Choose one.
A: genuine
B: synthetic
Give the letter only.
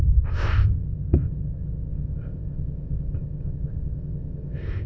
B